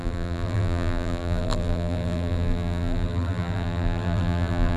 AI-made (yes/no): yes